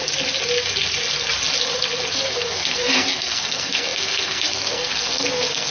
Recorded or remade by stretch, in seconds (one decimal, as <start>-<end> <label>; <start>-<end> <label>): 0.0-2.1 recorded; 2.1-5.7 remade